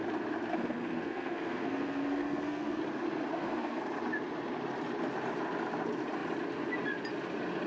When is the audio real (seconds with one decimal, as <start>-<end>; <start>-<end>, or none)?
0.0-0.5; 2.8-3.3; 3.8-7.7